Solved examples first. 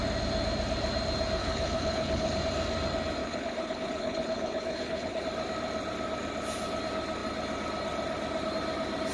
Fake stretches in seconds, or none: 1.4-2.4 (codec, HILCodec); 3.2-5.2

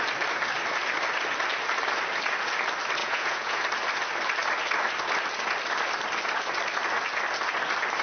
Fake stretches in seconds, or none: 3.0-3.6 (vocoder, Vocos)

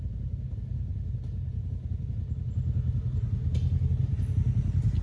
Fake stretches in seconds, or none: none

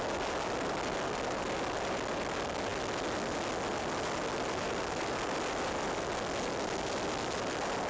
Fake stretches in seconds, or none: none

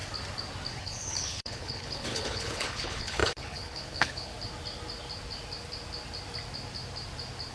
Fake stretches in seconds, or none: 0.8-4.3 (codec, HILCodec)

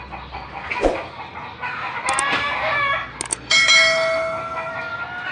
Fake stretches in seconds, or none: 3.3-4.7 (autoencoder, DAC-VAE)

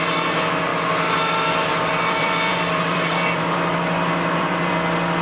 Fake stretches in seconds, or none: 1.7-4.7 (vocoder, BigVGAN v2)